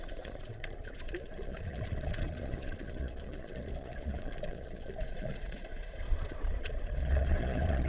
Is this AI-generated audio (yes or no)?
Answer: yes